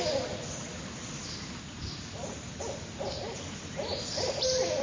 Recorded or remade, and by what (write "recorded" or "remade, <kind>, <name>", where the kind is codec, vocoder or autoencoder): recorded